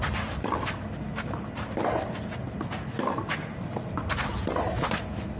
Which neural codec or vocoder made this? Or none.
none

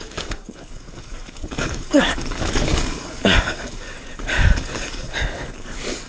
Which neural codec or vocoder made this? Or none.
codec, DAC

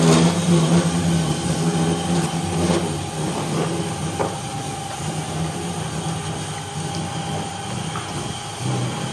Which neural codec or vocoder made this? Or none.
none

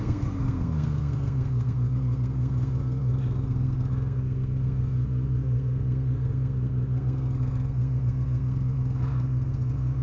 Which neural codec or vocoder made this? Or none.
codec, SNAC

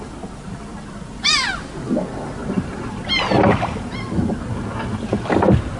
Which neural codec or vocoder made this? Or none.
none